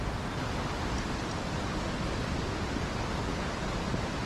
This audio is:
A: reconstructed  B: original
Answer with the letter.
B